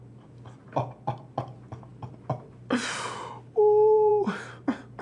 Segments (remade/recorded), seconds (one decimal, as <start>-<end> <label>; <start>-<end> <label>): 0.0-5.0 recorded